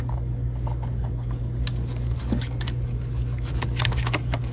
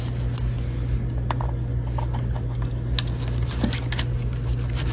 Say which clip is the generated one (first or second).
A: first